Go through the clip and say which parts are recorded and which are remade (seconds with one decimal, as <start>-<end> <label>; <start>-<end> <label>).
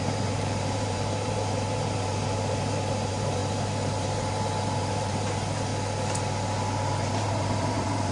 0.0-5.7 remade; 5.7-7.1 recorded; 7.1-8.1 remade